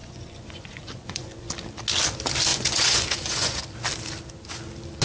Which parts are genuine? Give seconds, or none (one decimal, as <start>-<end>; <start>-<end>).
1.5-2.5; 3.6-5.0